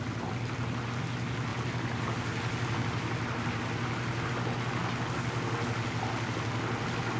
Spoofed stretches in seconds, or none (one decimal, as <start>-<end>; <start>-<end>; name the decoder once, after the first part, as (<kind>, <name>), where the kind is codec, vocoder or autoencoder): none